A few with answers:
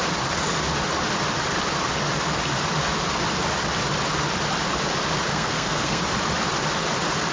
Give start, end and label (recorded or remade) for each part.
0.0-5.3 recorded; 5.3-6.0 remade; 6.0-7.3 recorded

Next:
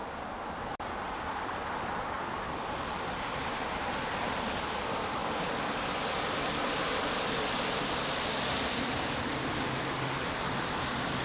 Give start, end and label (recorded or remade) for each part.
0.0-11.2 recorded

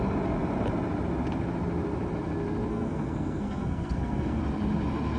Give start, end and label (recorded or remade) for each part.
0.0-2.7 recorded; 2.7-4.4 remade; 4.4-5.2 recorded

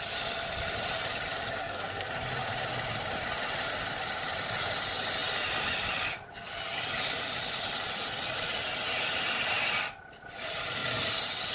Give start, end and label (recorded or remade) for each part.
0.0-1.6 recorded; 1.6-2.1 remade; 2.1-11.5 recorded

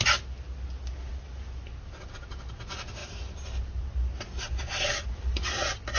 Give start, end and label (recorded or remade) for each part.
0.0-6.0 recorded

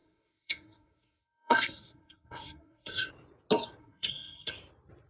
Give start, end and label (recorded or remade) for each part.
0.0-3.1 remade; 3.1-3.8 recorded; 3.8-4.5 remade; 4.5-5.1 recorded

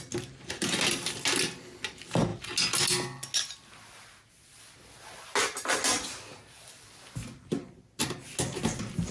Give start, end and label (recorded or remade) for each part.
0.0-9.1 recorded

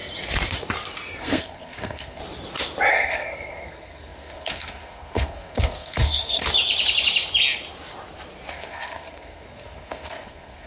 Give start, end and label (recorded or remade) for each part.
0.0-1.2 recorded; 1.2-2.2 remade; 2.2-2.9 recorded; 2.9-6.4 remade; 6.4-8.5 recorded; 8.5-10.7 remade